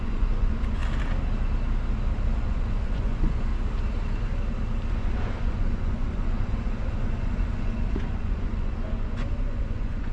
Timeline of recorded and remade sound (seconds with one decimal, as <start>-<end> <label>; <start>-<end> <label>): 0.0-0.8 remade; 0.8-2.4 recorded; 2.4-3.5 remade; 3.5-4.9 recorded; 4.9-10.1 remade